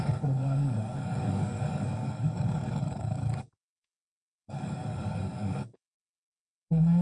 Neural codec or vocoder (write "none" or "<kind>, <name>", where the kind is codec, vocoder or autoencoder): codec, DAC